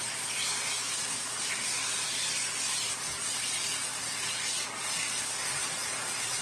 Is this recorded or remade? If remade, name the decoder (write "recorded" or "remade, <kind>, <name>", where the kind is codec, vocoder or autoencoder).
recorded